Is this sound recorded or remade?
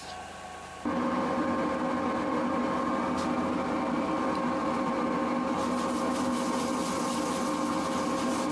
recorded